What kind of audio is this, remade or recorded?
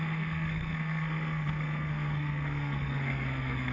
remade